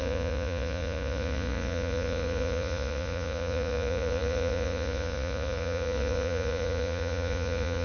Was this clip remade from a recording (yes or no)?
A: yes